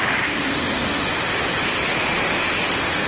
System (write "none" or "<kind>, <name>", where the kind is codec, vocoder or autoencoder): none